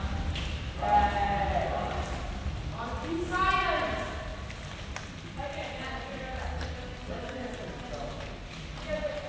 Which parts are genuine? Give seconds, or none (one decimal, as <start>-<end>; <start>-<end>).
0.0-9.3